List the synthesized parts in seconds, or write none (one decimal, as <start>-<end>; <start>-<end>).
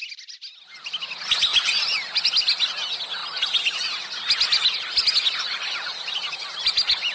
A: none